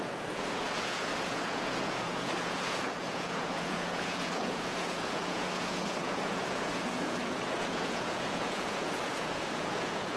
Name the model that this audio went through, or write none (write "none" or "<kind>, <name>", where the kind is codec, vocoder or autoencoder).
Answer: vocoder, Vocos